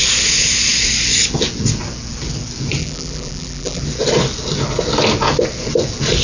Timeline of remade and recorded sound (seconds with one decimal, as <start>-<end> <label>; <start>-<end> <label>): 0.0-2.8 recorded; 2.8-3.8 remade; 3.8-6.2 recorded